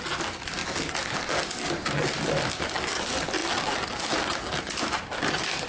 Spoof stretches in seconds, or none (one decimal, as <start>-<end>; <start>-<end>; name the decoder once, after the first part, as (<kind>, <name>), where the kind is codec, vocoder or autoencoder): none